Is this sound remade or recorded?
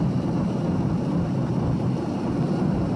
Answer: recorded